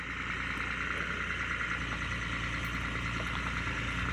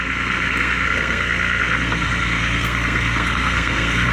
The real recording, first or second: first